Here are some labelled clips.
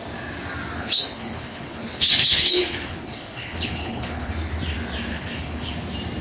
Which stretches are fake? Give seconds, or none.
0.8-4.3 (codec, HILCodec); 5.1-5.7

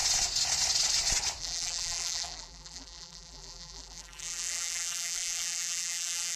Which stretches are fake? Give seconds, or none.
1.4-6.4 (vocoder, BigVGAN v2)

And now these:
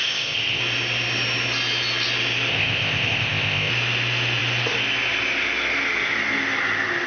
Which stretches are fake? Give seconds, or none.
0.0-0.6 (codec, ZipCodec); 2.5-3.7